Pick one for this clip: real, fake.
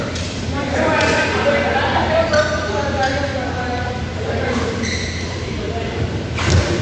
real